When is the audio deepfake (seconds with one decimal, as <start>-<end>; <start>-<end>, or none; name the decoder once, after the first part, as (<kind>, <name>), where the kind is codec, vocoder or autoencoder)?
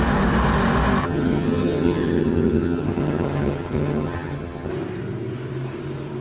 1.0-4.7 (vocoder, HiFi-GAN)